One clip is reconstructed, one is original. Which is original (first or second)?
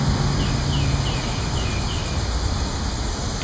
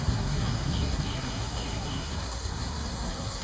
first